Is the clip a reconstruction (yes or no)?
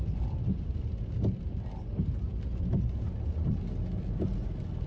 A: no